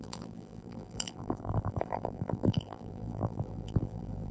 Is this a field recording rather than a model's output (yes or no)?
no